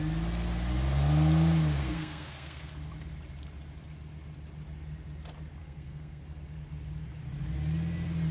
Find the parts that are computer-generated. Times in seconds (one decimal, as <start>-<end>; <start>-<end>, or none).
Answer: 1.8-2.7; 5.6-6.2